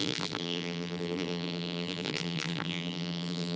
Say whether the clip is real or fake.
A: fake